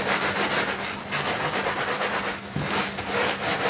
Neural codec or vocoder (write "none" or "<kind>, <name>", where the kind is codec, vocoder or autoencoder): none